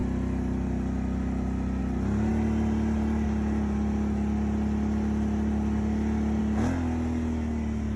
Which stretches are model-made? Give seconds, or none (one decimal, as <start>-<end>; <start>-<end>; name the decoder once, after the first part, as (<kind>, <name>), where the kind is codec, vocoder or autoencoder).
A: none